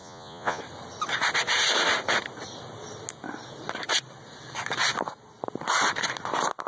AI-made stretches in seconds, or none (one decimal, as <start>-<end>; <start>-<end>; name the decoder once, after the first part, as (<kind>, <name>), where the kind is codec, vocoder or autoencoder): 0.0-0.6 (vocoder, Vocos)